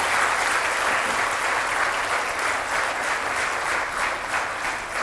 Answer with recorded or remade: recorded